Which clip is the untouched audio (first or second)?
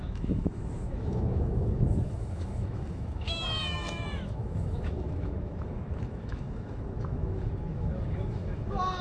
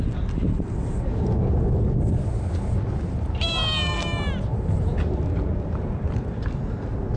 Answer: second